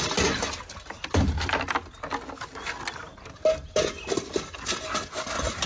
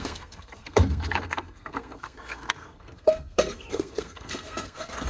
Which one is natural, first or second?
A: first